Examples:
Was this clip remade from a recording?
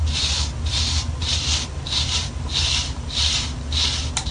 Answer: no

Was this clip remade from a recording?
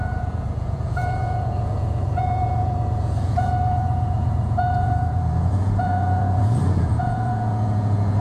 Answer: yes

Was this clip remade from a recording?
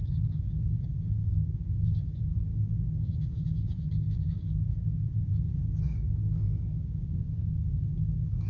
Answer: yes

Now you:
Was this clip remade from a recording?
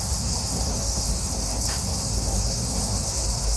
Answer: yes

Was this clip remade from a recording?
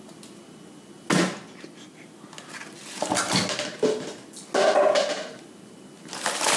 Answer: no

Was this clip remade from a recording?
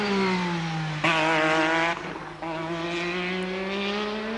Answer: no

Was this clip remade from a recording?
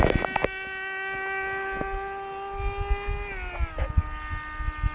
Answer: no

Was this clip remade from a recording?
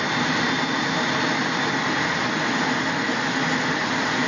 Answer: no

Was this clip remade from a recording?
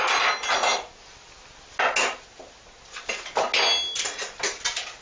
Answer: no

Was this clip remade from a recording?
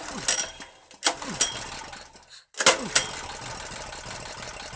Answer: no